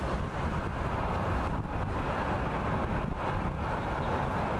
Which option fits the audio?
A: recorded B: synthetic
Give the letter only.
A